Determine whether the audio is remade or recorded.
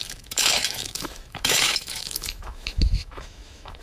remade